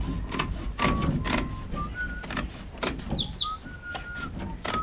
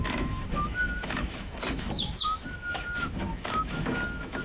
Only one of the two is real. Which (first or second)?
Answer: first